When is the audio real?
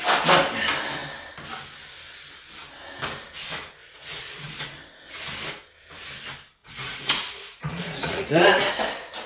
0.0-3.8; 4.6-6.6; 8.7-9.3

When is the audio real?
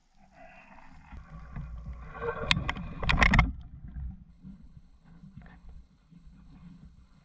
0.0-4.3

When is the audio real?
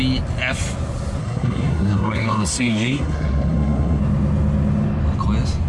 0.0-1.2; 4.0-5.7